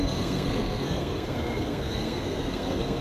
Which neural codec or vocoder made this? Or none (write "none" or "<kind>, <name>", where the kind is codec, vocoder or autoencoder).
codec, SNAC